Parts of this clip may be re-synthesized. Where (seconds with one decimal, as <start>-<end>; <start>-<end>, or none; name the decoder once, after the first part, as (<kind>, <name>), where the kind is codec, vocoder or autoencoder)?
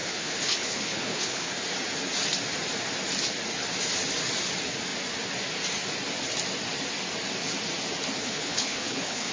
0.0-1.5 (codec, HILCodec); 8.2-9.3